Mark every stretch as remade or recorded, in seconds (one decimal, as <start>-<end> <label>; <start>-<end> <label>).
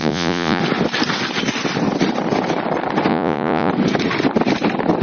0.0-0.6 remade; 0.6-3.1 recorded; 3.1-3.7 remade; 3.7-5.0 recorded